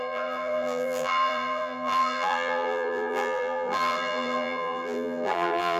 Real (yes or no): no